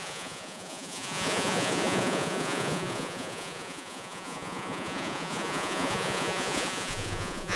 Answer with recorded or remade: remade